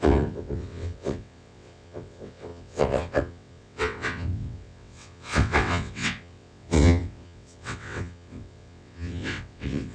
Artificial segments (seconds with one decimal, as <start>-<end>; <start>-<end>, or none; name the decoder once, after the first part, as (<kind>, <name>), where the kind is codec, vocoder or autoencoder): 0.0-9.9 (vocoder, WaveNeXt)